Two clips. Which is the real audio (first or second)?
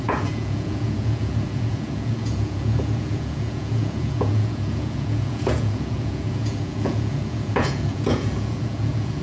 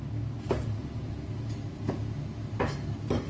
second